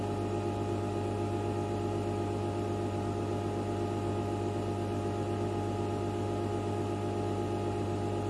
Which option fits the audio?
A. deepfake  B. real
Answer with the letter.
B